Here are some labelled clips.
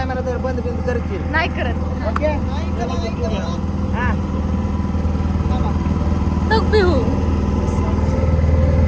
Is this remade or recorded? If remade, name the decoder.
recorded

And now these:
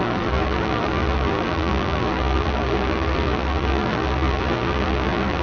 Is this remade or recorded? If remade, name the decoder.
remade, vocoder, BigVGAN v2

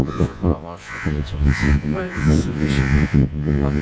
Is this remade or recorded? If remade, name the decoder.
remade, vocoder, Vocos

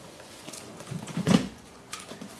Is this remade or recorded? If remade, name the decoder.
remade, vocoder, Vocos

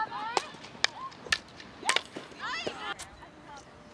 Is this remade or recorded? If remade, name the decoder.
recorded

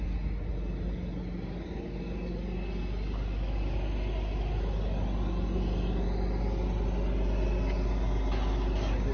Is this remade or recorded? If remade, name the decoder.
recorded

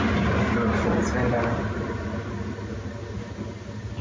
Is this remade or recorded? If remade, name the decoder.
recorded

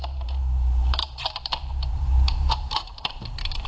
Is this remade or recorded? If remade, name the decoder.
remade, vocoder, BigVGAN v2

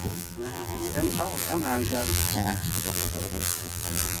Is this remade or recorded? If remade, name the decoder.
remade, vocoder, BigVGAN v2